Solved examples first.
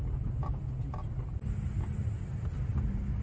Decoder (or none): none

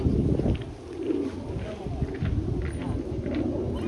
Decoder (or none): none